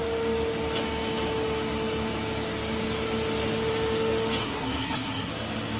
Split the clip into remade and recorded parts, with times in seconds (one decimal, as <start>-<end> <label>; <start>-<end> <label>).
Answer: 0.0-4.4 recorded; 4.4-5.3 remade; 5.3-5.8 recorded